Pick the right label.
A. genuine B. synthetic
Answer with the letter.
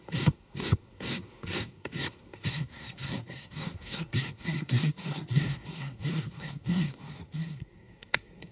B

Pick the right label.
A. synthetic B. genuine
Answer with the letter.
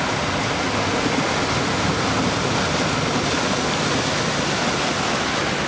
B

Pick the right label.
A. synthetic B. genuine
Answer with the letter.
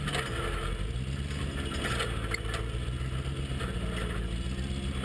B